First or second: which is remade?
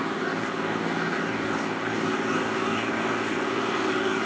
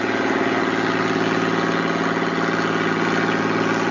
first